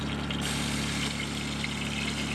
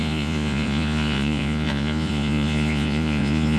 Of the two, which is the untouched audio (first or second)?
first